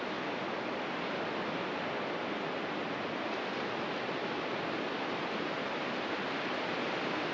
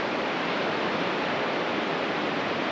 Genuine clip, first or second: first